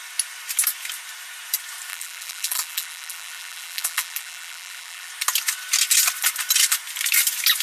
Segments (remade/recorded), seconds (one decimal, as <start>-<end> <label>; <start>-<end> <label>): 0.0-1.9 recorded; 1.9-5.1 remade; 5.1-7.6 recorded

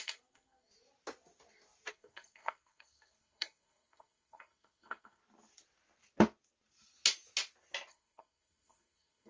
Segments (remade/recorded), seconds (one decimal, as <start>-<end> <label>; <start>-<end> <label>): 0.0-0.7 remade; 0.7-1.9 recorded; 1.9-5.2 remade; 5.2-7.9 recorded; 7.9-9.3 remade

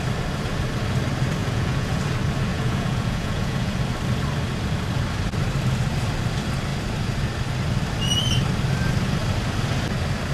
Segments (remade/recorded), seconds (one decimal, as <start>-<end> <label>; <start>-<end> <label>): 0.0-1.4 recorded; 1.4-2.0 remade; 2.0-2.5 recorded; 2.5-3.8 remade; 3.8-10.3 recorded